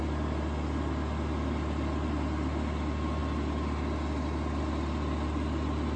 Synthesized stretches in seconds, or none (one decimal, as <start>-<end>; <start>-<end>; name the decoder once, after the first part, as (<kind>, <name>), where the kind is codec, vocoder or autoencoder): none